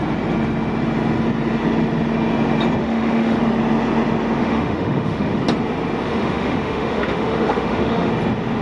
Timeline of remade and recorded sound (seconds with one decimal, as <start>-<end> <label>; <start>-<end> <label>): 0.0-2.8 recorded; 2.8-3.4 remade; 3.4-4.4 recorded; 4.4-5.4 remade; 5.4-6.1 recorded; 6.1-8.1 remade; 8.1-8.6 recorded